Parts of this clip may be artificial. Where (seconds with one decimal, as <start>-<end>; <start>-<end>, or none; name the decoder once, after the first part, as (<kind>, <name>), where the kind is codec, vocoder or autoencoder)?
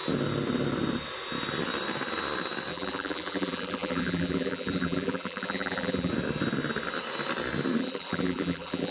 2.7-6.1 (vocoder, BigVGAN v2); 7.8-8.9